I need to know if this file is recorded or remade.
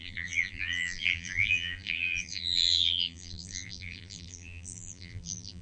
remade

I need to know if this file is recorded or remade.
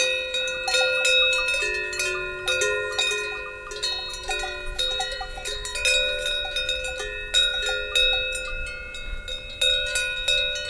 recorded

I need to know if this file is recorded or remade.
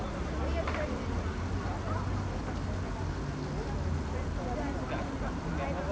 recorded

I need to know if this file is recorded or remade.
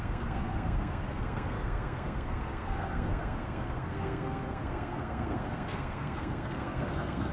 remade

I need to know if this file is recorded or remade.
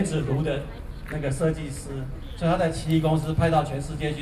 recorded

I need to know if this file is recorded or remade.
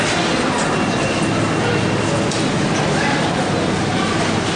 recorded